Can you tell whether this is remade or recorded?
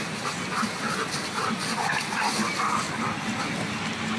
recorded